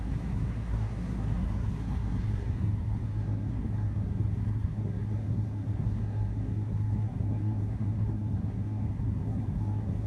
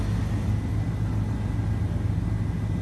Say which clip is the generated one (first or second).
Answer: first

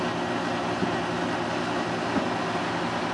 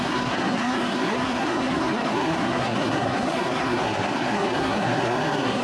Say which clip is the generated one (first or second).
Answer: second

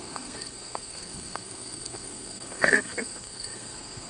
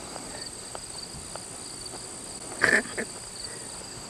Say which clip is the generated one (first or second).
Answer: first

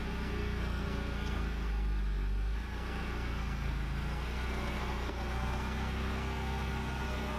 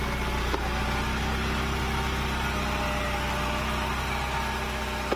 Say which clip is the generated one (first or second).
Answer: first